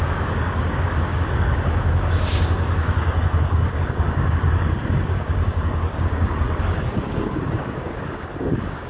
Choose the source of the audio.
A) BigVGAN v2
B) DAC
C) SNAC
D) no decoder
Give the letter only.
B